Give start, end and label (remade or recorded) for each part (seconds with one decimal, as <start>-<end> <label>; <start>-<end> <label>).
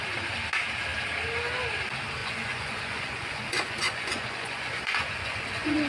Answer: 0.0-2.2 recorded; 2.2-5.9 remade